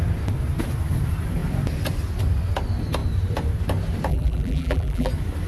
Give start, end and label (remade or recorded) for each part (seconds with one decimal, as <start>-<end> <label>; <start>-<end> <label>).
0.0-4.1 recorded; 4.1-5.1 remade; 5.1-5.5 recorded